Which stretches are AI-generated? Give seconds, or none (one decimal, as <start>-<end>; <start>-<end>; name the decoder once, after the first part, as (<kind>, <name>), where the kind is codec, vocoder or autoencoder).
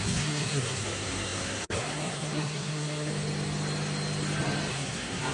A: 0.0-3.1 (codec, SNAC); 4.7-5.3